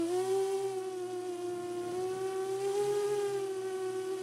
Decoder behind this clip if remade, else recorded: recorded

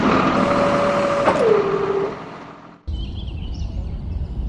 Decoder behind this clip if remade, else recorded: recorded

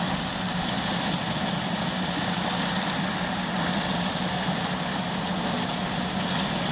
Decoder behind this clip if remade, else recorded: recorded